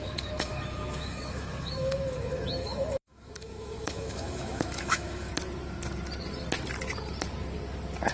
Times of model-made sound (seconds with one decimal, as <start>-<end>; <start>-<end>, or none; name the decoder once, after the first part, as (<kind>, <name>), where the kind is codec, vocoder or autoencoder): 0.0-5.3 (autoencoder, DAC-VAE)